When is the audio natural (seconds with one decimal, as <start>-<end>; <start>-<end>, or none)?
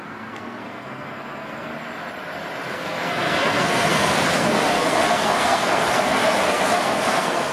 1.7-2.7